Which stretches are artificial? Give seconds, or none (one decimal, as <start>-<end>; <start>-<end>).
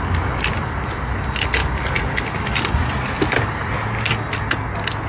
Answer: none